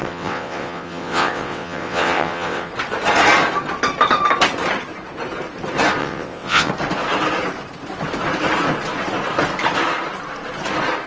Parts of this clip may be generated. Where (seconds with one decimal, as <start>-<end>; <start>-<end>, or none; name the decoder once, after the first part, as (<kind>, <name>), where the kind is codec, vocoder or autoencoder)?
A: 0.0-2.7 (vocoder, WaveNeXt); 6.0-6.7